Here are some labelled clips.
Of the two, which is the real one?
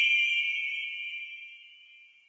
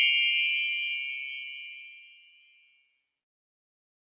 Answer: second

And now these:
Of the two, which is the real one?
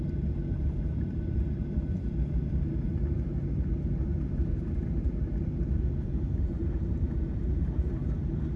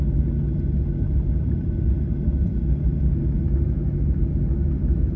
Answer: second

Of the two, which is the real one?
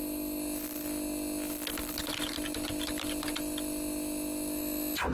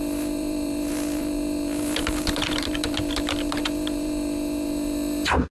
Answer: first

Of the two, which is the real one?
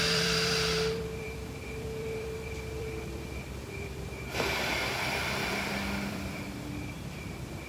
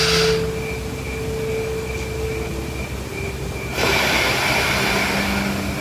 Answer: second